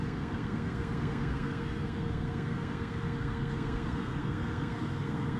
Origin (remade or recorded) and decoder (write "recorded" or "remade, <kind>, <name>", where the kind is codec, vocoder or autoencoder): remade, codec, SNAC